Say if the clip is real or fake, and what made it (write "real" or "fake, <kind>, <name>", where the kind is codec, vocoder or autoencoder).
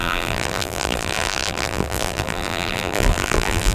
fake, vocoder, BigVGAN v2